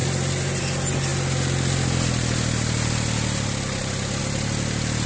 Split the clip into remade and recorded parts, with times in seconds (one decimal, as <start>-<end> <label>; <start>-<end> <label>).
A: 0.0-5.1 recorded